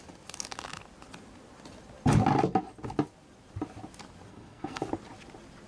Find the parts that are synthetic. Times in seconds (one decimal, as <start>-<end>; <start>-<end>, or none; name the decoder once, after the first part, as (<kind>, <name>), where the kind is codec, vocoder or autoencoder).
4.3-4.8 (codec, SNAC)